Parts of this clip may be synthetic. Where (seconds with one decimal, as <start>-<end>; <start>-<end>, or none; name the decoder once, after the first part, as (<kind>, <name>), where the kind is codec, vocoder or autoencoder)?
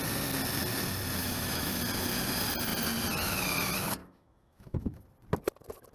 1.2-1.8 (autoencoder, DAC-VAE); 4.0-5.0